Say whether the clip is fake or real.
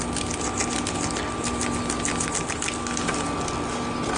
real